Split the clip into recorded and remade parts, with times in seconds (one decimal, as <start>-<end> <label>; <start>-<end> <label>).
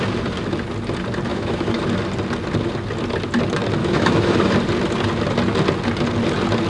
0.0-1.3 recorded; 1.3-1.8 remade; 1.8-3.8 recorded; 3.8-4.5 remade; 4.5-6.7 recorded